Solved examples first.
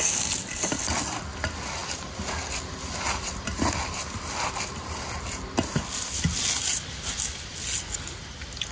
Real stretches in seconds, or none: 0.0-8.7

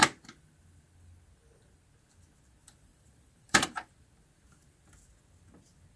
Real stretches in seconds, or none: 0.0-2.6; 3.9-6.0

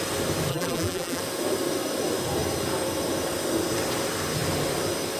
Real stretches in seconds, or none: 0.0-0.5; 1.2-5.2